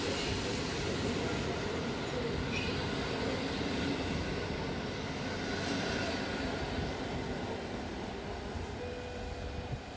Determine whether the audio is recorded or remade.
recorded